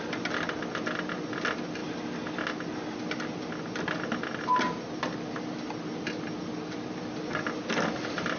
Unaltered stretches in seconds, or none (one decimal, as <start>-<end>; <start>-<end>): 0.0-8.4